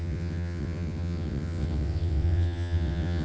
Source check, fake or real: fake